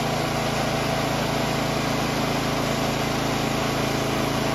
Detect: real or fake real